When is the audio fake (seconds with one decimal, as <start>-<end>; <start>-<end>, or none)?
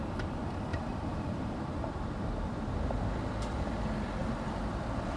0.7-3.8; 4.2-4.7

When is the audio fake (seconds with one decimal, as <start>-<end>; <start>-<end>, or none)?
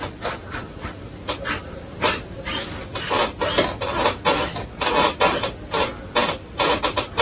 0.4-3.2; 5.9-6.8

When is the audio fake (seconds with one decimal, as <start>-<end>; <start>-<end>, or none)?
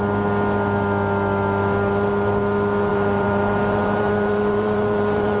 2.9-5.4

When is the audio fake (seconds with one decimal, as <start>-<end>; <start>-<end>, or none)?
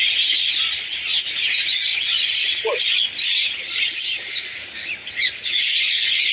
1.9-5.6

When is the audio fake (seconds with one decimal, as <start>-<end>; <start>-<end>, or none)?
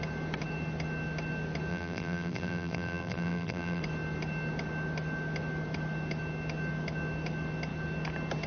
1.7-3.8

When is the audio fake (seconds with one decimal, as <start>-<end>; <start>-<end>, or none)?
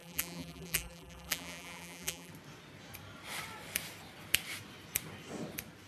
0.0-2.3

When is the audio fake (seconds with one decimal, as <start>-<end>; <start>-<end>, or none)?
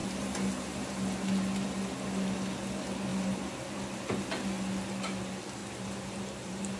5.6-6.8